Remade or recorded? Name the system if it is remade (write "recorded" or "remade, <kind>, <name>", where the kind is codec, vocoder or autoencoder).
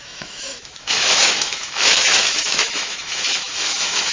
remade, autoencoder, DAC-VAE